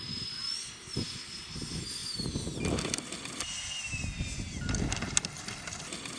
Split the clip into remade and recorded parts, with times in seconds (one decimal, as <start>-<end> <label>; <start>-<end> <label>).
0.0-6.2 recorded